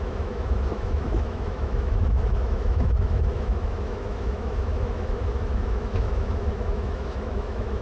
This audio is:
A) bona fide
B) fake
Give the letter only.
B